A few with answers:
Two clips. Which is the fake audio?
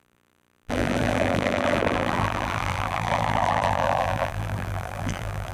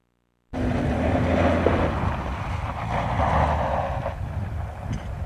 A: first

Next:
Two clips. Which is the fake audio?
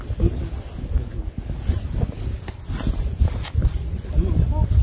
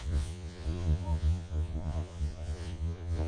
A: second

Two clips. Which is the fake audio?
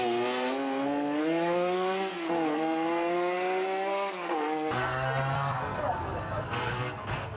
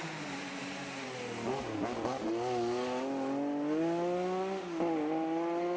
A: first